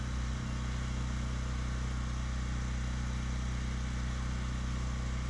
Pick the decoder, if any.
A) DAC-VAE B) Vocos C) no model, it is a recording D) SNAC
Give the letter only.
C